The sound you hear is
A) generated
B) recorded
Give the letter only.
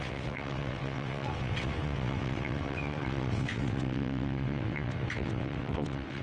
A